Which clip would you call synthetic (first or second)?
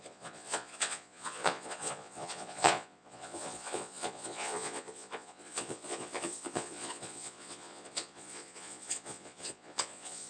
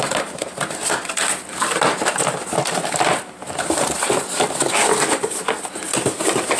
first